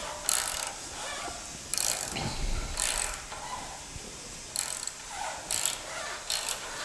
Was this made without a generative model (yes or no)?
yes